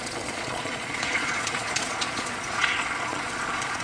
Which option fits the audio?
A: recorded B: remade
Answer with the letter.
B